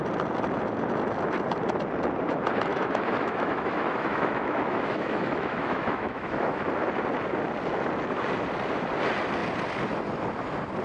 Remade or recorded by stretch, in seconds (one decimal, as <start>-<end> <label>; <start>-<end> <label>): 0.0-2.7 recorded; 2.7-6.7 remade; 6.7-10.8 recorded